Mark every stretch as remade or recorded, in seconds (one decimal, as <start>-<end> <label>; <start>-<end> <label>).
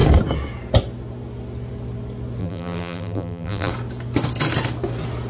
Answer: 0.0-2.4 recorded; 2.4-3.7 remade; 3.7-5.3 recorded